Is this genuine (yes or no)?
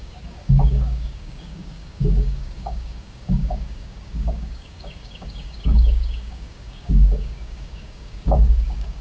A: no